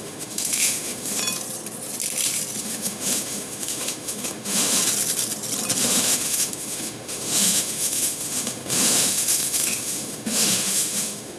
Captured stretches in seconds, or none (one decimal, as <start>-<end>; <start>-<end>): 1.2-2.6; 4.8-5.8